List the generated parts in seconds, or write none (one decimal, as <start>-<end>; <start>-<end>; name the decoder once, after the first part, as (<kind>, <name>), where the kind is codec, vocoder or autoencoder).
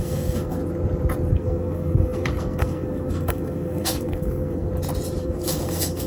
0.0-0.6 (codec, SNAC); 1.3-4.7; 5.2-6.1